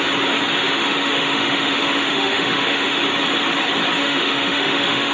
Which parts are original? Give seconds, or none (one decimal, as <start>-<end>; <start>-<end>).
0.0-0.6; 3.0-4.0